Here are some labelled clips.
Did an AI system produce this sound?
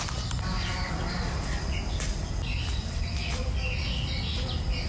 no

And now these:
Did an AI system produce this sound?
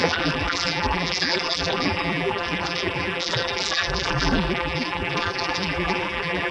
yes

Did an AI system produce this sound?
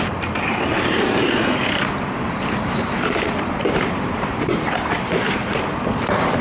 yes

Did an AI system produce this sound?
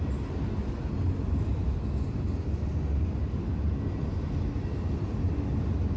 no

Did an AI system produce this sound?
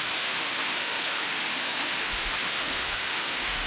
yes